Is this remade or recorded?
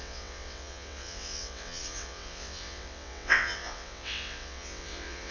remade